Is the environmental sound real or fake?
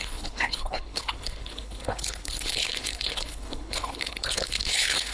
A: fake